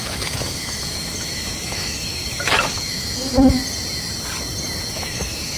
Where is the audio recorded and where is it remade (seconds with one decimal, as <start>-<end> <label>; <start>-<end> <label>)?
0.0-3.6 remade; 3.6-4.9 recorded; 4.9-5.6 remade